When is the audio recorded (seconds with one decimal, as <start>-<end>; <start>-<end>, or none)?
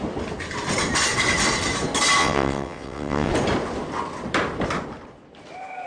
0.0-2.2; 3.3-5.9